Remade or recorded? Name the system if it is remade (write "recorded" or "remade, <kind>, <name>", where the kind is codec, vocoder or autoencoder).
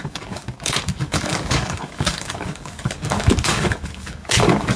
remade, codec, DAC